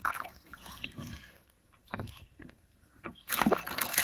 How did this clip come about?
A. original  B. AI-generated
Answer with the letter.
B